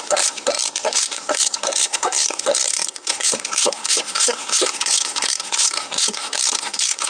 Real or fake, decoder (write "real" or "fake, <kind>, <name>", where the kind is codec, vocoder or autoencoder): fake, codec, SNAC